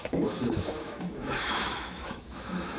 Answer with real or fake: fake